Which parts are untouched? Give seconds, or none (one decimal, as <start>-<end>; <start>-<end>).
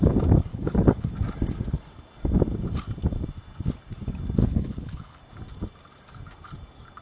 0.0-0.5; 1.1-4.4; 5.2-7.0